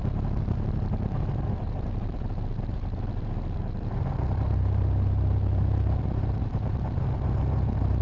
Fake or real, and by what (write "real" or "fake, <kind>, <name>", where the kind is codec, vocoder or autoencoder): fake, vocoder, BigVGAN v2